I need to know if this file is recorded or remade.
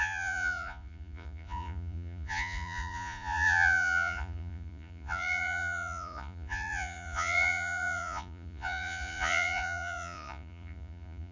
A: remade